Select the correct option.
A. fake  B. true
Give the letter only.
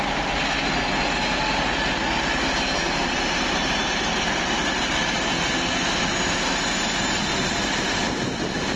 B